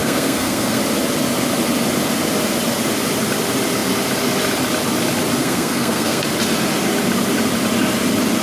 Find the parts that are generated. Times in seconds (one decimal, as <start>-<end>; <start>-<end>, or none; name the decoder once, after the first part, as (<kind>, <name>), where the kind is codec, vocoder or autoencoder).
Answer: 0.0-0.8 (codec, SNAC); 5.4-6.2